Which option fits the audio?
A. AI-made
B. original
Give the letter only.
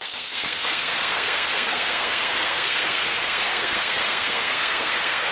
A